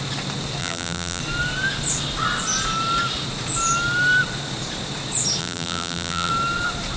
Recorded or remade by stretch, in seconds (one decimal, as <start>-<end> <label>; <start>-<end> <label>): 0.0-0.6 recorded; 0.6-1.2 remade; 1.2-5.4 recorded; 5.4-6.3 remade; 6.3-7.0 recorded